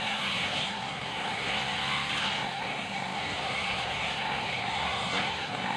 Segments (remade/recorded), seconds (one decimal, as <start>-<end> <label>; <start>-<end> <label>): 0.0-1.5 remade; 1.5-2.2 recorded; 2.2-5.8 remade